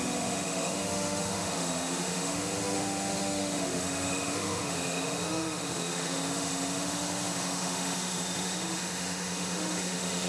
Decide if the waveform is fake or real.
fake